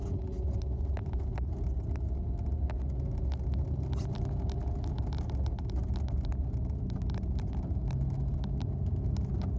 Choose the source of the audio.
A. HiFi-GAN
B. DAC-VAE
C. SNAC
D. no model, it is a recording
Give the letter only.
D